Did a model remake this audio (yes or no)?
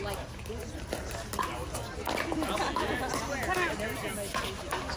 no